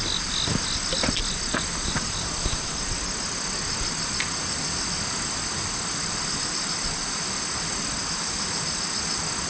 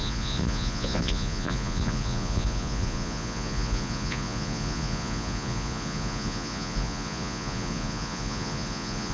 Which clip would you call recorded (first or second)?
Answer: first